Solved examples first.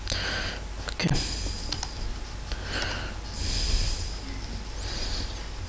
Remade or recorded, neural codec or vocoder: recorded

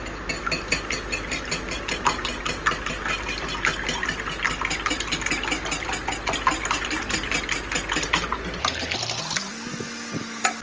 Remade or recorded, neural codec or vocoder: recorded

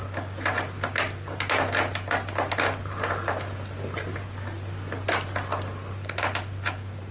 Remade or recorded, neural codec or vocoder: recorded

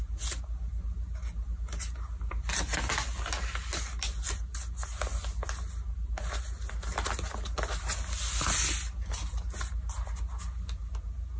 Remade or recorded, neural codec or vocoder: recorded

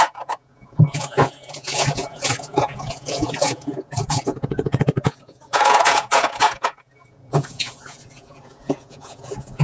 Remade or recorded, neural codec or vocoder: remade, vocoder, Vocos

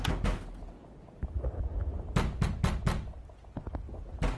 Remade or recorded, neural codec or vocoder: recorded